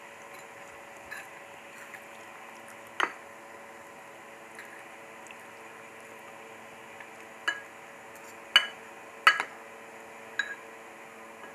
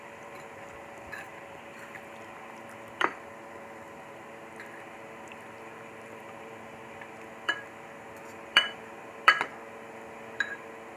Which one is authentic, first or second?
first